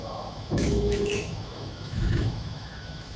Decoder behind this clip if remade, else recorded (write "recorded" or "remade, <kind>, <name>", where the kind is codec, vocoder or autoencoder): remade, autoencoder, DAC-VAE